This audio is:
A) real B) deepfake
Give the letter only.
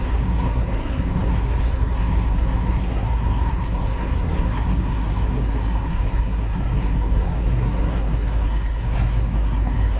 B